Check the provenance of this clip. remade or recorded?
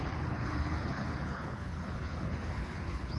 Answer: remade